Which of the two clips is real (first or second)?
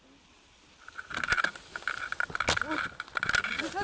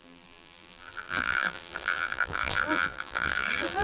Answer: first